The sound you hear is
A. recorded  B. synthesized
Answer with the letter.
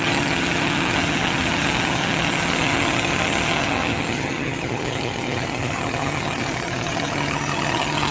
B